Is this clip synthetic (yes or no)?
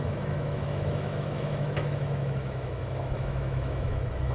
yes